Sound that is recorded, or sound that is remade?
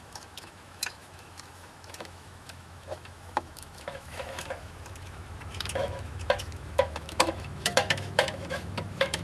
remade